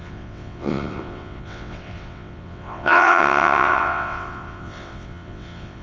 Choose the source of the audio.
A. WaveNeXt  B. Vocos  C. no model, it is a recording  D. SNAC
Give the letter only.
A